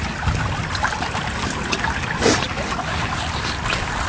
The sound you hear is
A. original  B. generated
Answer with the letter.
A